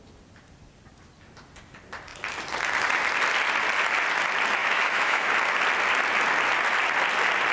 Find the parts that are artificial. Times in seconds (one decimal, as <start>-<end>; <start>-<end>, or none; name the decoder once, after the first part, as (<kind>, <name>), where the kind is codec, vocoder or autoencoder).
4.6-5.3 (autoencoder, DAC-VAE)